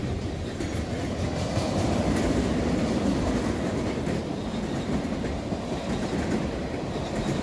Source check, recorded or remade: recorded